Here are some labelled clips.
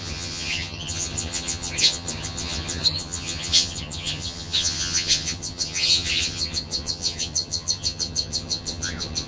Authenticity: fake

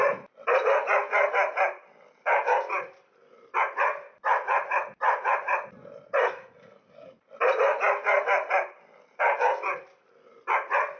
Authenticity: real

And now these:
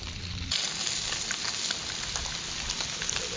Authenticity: real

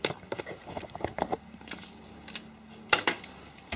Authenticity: real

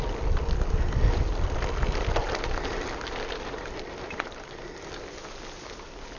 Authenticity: real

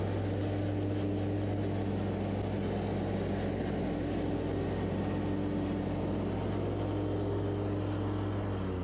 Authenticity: real